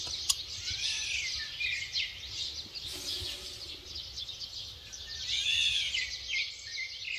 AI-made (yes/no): no